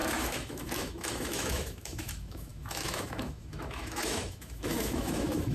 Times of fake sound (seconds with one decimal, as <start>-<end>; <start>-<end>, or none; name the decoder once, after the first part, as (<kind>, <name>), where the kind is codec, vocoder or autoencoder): 0.0-5.5 (autoencoder, DAC-VAE)